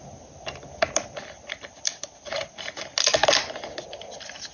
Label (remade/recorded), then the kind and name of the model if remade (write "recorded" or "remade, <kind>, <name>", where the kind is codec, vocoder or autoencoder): recorded